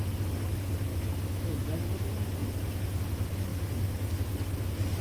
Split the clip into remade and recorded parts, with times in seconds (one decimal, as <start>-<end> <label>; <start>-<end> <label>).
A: 0.0-0.9 recorded; 0.9-1.5 remade; 1.5-5.0 recorded